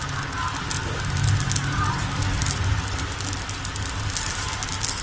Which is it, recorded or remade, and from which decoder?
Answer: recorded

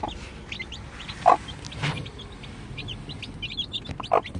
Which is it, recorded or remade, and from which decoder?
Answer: recorded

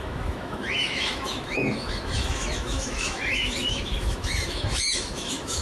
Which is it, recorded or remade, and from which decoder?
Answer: remade, autoencoder, DAC-VAE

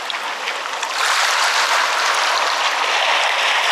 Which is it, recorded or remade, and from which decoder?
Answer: recorded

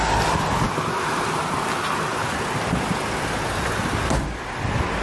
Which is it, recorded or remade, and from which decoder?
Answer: recorded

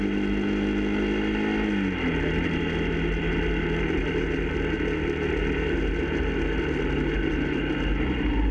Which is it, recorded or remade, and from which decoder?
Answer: recorded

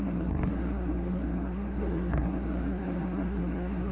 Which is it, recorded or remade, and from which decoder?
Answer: remade, codec, SNAC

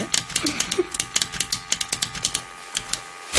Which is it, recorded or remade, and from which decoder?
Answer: recorded